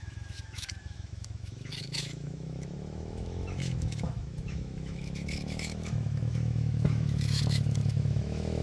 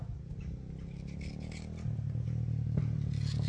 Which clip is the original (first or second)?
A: second